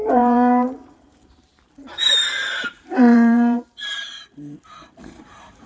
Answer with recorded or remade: remade